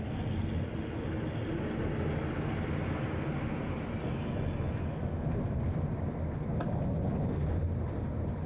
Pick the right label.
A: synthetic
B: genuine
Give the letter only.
B